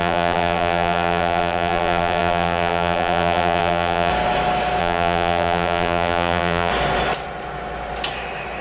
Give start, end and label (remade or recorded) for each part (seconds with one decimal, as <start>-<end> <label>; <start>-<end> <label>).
0.0-4.1 remade; 4.1-4.8 recorded; 4.8-6.7 remade; 6.7-8.6 recorded